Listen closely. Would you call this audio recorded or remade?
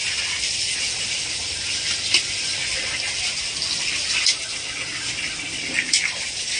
recorded